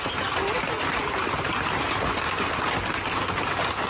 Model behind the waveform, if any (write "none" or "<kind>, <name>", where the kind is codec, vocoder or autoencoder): none